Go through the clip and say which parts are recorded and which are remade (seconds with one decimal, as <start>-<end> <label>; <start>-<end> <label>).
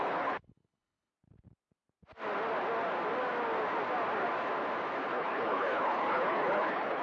0.0-1.1 remade; 1.1-5.1 recorded; 5.1-7.0 remade